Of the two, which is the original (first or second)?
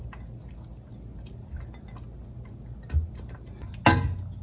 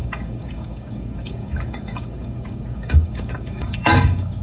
first